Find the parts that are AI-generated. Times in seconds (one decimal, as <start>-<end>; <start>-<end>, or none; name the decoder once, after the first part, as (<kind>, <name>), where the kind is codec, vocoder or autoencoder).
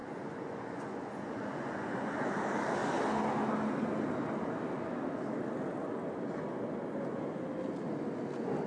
0.0-2.1 (vocoder, Vocos)